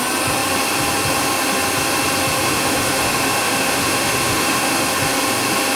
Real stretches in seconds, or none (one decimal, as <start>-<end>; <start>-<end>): 0.0-2.4; 4.9-5.8